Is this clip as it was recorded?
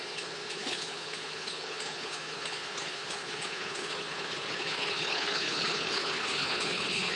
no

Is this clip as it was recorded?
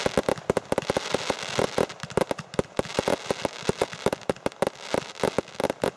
yes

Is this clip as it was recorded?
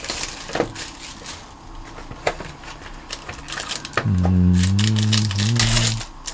yes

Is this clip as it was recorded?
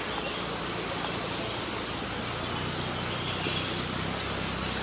yes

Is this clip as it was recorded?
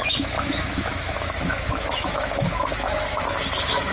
no